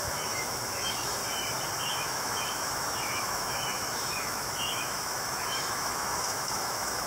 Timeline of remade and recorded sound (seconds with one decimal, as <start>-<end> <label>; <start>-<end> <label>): 0.0-1.2 remade; 1.2-1.8 recorded; 1.8-7.1 remade